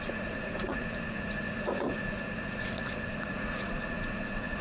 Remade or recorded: remade